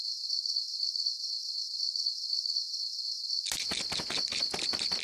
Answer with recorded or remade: recorded